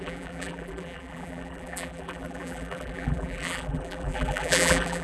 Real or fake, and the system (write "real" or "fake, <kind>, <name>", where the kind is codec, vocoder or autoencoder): fake, vocoder, BigVGAN v2